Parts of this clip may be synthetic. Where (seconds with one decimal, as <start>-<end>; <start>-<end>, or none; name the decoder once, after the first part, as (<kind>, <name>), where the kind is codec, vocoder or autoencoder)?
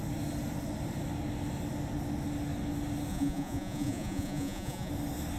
3.1-4.9 (vocoder, Vocos)